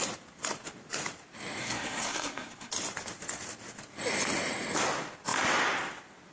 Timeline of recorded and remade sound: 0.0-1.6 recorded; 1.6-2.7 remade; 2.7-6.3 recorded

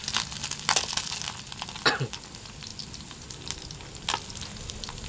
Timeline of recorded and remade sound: 0.0-5.1 recorded

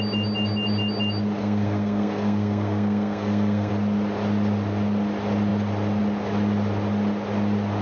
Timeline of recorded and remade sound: 0.0-1.4 recorded; 1.4-3.7 remade; 3.7-7.8 recorded

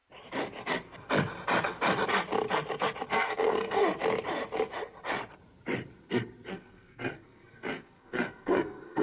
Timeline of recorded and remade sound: 0.0-3.1 recorded; 3.1-3.8 remade; 3.8-6.5 recorded; 6.5-9.0 remade

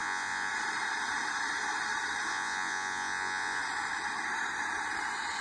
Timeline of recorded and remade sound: 0.0-0.5 remade; 0.5-2.3 recorded; 2.3-3.6 remade; 3.6-5.4 recorded

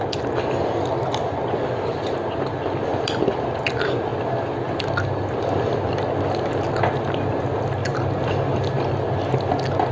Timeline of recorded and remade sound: 0.0-7.8 recorded; 7.8-8.6 remade; 8.6-9.9 recorded

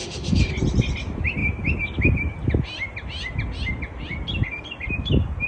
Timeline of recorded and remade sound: 0.0-0.5 remade; 0.5-5.5 recorded